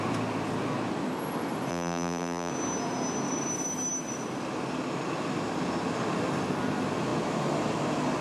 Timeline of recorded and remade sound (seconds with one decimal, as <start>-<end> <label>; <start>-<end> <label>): 0.0-1.7 recorded; 1.7-2.5 remade; 2.5-8.2 recorded